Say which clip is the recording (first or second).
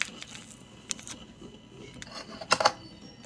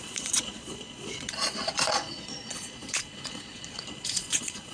first